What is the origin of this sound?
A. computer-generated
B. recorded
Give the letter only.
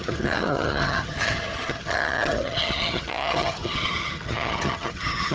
A